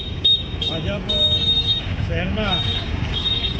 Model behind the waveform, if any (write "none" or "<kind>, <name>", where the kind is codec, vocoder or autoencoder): codec, DAC